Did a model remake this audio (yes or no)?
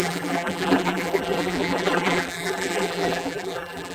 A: yes